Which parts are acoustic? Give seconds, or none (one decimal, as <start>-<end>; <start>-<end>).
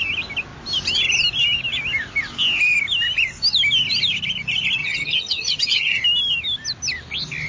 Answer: 0.0-4.8; 6.0-7.5